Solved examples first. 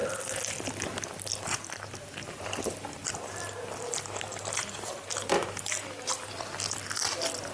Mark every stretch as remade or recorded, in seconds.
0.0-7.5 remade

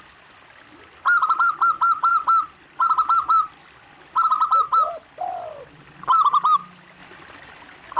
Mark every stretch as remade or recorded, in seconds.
0.0-2.1 recorded; 2.1-5.3 remade; 5.3-8.0 recorded

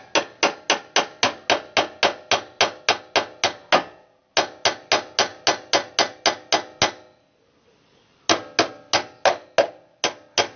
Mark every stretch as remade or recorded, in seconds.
0.0-10.6 recorded

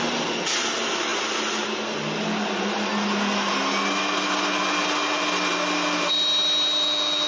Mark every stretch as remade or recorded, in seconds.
0.0-7.3 recorded

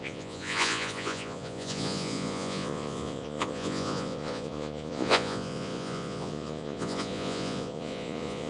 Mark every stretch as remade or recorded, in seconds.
0.0-8.5 remade

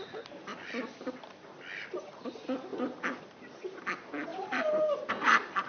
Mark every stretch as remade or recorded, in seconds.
0.0-0.5 recorded; 0.5-2.0 remade; 2.0-4.3 recorded; 4.3-5.1 remade; 5.1-5.7 recorded

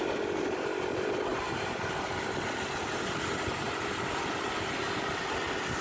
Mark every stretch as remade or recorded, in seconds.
0.0-1.3 recorded; 1.3-4.8 remade; 4.8-5.8 recorded

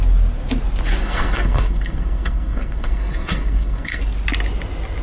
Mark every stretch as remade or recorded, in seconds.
0.0-1.0 recorded; 1.0-4.0 remade; 4.0-5.0 recorded